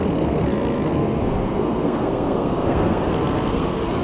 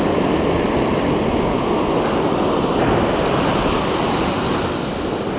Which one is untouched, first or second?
second